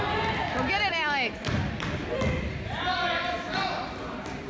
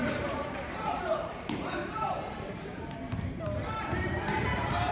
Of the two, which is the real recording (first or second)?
first